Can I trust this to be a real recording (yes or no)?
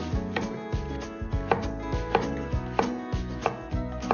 yes